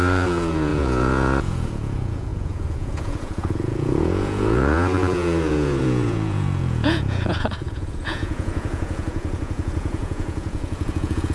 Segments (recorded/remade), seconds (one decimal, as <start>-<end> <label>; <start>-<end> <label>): 0.0-11.3 remade